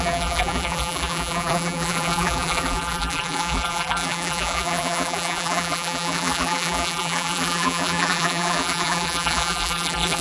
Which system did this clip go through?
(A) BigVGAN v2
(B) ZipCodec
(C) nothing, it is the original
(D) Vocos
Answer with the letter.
A